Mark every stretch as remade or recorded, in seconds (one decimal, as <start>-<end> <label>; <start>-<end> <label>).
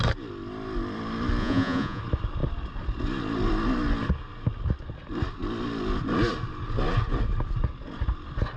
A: 0.0-1.4 recorded; 1.4-2.0 remade; 2.0-8.6 recorded